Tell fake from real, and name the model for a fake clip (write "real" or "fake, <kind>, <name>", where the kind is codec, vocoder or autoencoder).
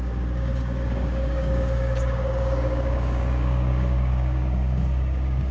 fake, codec, DAC